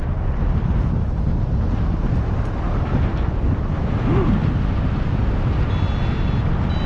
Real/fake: real